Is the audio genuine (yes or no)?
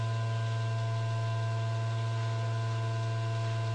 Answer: yes